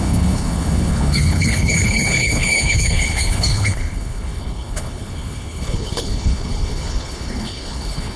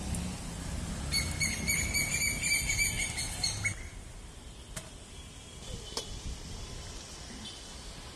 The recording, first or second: second